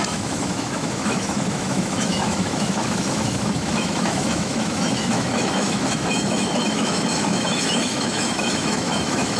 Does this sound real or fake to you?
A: fake